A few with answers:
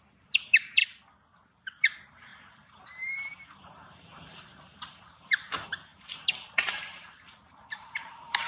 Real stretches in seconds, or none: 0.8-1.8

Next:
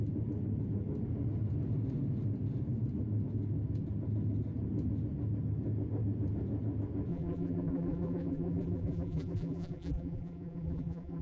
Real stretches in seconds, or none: 0.0-7.1

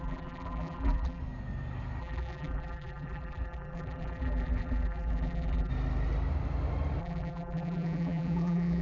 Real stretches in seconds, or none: 1.2-2.0; 5.7-7.0

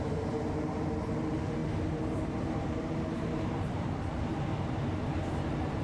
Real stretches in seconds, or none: 0.0-5.8

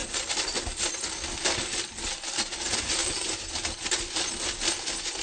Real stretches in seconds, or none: 0.8-3.0; 3.8-5.2

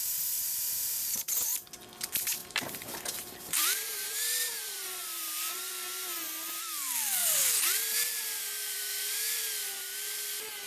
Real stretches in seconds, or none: 0.0-2.4; 5.7-7.2; 9.4-10.7

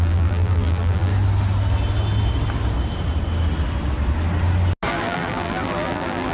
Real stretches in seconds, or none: 1.1-4.9